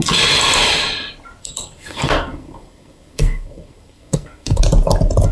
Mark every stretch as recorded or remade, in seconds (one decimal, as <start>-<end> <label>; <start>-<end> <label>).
0.0-1.4 recorded; 1.4-4.6 remade; 4.6-5.3 recorded